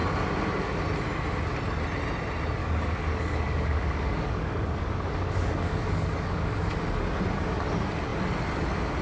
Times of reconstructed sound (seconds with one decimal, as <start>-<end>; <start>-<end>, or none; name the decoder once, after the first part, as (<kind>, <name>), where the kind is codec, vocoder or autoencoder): 2.6-6.7 (codec, DAC)